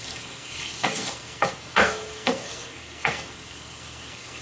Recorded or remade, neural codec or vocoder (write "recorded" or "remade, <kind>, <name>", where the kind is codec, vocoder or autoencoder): remade, codec, SNAC